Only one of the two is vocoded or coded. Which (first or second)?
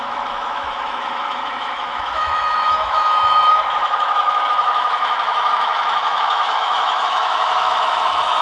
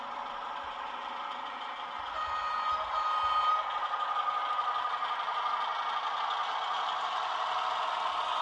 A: first